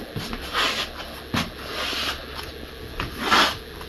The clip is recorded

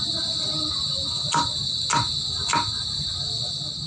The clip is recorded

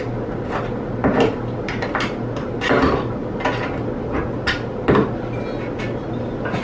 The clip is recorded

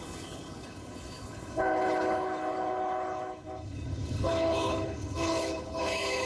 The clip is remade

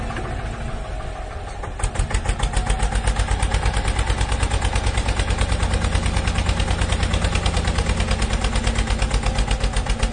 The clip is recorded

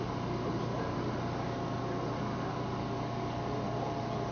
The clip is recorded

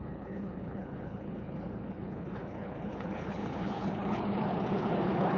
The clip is remade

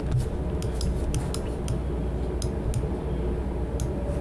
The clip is recorded